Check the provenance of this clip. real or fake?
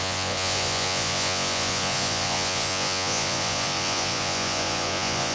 fake